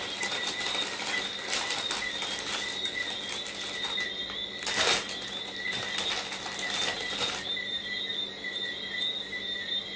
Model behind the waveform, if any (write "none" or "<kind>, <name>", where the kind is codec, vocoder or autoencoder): none